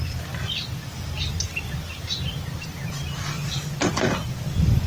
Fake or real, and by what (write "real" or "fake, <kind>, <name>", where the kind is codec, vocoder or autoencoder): real